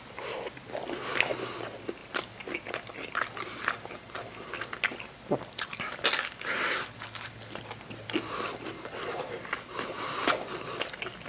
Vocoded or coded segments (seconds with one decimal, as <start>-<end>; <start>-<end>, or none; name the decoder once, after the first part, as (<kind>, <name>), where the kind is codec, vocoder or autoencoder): none